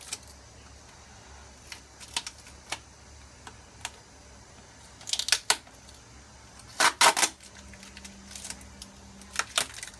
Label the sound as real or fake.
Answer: real